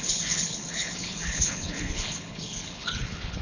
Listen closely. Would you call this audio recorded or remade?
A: remade